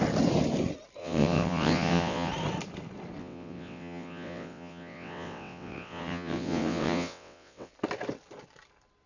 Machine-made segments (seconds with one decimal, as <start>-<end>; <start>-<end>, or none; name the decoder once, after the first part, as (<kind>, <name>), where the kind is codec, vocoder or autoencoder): 1.0-2.3 (vocoder, WaveNeXt); 3.2-7.7